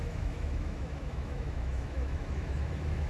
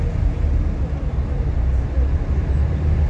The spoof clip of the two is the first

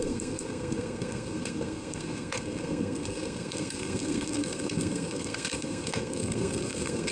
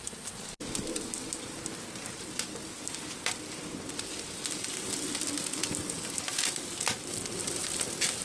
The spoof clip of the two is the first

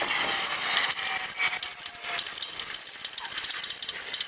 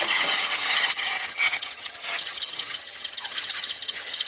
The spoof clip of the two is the second